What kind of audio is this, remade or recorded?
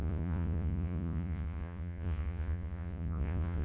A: remade